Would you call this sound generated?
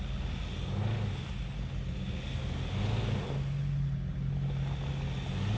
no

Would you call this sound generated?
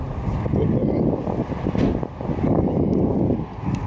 no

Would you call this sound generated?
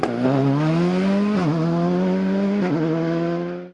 no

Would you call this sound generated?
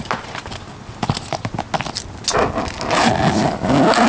no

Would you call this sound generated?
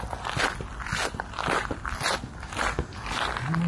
no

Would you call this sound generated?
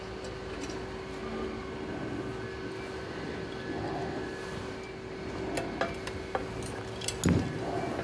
no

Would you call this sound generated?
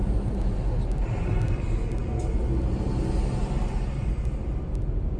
no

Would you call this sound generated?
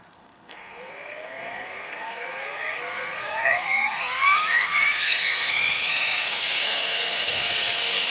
yes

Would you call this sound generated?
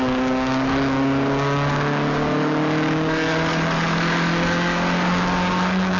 yes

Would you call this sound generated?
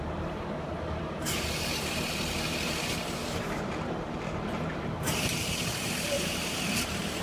yes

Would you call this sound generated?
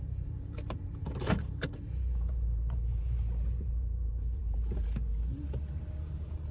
yes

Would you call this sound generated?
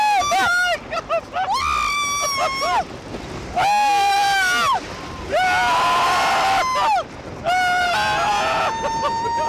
no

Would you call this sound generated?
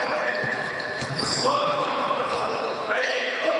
yes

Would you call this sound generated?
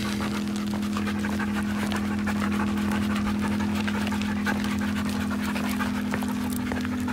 no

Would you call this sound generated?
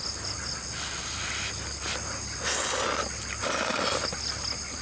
no